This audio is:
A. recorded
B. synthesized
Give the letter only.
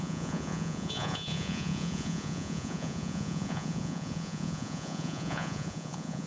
B